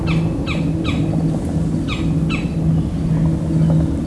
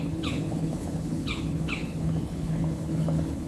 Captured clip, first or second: first